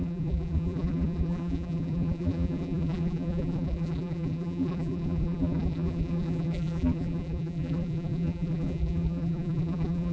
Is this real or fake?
fake